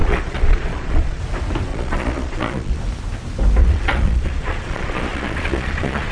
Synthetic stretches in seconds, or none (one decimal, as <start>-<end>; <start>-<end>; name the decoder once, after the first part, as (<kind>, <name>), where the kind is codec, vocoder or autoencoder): 0.0-1.2 (vocoder, Vocos); 1.7-2.8; 3.6-6.1